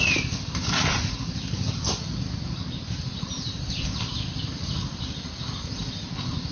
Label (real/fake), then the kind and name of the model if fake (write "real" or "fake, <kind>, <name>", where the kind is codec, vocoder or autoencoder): real